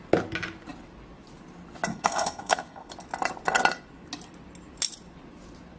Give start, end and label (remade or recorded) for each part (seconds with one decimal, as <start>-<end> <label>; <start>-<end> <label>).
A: 0.0-1.9 recorded; 1.9-2.9 remade; 2.9-5.8 recorded